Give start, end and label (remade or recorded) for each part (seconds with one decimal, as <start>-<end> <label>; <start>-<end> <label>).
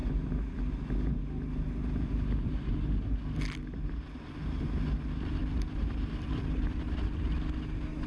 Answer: 0.0-8.1 recorded